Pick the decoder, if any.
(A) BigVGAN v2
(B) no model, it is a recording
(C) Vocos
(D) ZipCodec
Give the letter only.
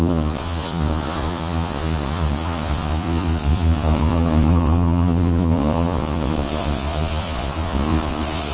C